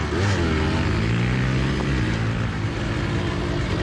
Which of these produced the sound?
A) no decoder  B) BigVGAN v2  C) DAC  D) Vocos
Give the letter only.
A